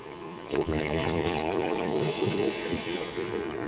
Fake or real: fake